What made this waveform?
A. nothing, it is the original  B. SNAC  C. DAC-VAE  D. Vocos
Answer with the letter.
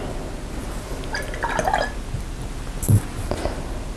A